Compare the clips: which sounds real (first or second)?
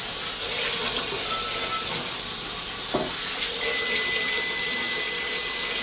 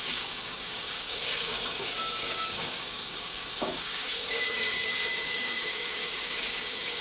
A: first